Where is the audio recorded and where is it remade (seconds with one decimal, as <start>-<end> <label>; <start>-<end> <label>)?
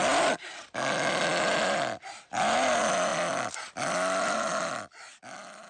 0.0-5.7 recorded